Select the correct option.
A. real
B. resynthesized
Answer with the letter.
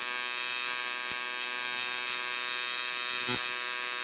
A